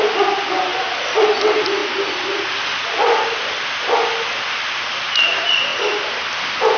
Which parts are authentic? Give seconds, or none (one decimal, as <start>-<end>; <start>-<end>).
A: 0.0-0.7; 1.3-1.8; 3.5-5.7